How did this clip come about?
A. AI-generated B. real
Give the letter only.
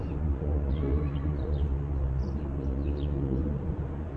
A